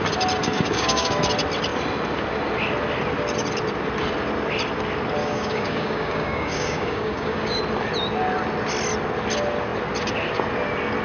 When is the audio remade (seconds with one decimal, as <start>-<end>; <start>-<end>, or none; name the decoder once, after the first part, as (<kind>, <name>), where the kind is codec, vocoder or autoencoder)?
0.4-1.2 (codec, DAC); 5.2-7.6